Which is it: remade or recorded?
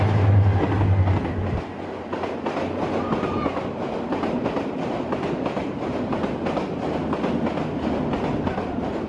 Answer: recorded